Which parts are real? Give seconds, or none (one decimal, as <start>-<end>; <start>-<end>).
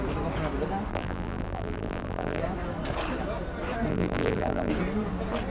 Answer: 0.0-0.9; 2.4-3.9; 4.7-5.5